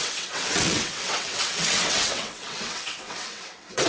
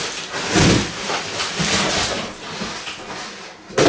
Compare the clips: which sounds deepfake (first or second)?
first